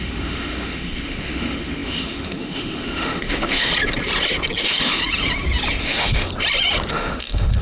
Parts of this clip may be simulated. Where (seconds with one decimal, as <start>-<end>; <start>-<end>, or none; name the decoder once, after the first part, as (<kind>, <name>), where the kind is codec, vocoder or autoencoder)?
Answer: 0.0-3.7 (autoencoder, DAC-VAE); 4.6-5.0; 5.8-6.3; 6.9-7.6